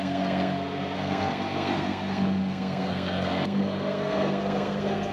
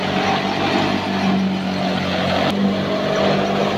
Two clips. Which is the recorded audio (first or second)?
second